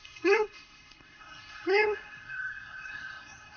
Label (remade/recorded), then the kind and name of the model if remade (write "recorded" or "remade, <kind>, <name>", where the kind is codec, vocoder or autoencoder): remade, codec, SNAC